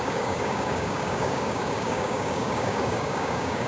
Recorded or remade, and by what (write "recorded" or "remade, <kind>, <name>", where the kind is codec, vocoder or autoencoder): remade, codec, DAC